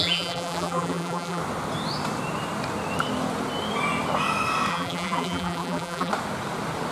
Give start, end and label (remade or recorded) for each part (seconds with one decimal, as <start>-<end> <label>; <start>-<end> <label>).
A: 0.0-1.4 remade; 1.4-4.7 recorded; 4.7-6.1 remade; 6.1-6.9 recorded